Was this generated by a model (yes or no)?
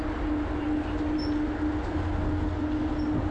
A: no